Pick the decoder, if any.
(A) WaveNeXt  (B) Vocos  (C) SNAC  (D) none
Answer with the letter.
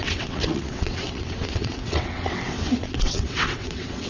A